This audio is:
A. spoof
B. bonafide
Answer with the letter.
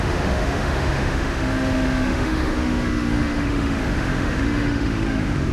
A